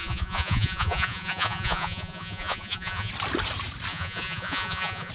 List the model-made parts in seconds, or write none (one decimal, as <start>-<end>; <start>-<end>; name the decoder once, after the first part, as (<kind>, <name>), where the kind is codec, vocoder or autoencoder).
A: 0.0-3.1 (vocoder, Vocos); 3.9-5.1